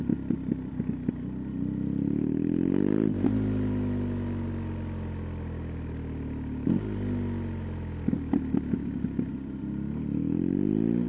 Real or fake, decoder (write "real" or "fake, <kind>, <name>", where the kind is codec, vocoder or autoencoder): real